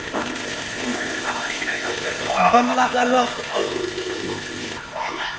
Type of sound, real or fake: fake